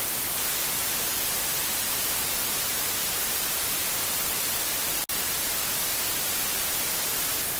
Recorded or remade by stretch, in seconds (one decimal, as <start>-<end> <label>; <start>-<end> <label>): 0.0-2.7 recorded; 2.7-4.1 remade; 4.1-5.1 recorded; 5.1-7.6 remade